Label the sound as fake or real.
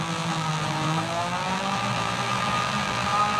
fake